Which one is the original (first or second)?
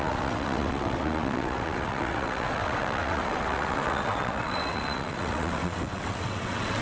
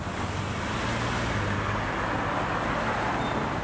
second